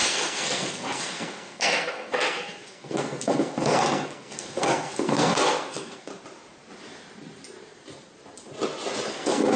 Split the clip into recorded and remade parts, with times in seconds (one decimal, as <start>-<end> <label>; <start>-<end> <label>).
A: 0.0-6.1 remade; 6.1-9.1 recorded; 9.1-9.6 remade